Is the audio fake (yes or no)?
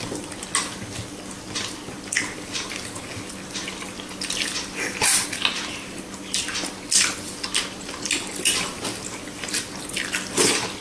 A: no